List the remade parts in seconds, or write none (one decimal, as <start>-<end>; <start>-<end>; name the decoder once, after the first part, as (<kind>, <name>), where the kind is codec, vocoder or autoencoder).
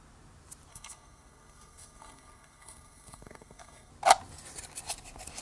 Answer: 0.7-3.9 (codec, SNAC)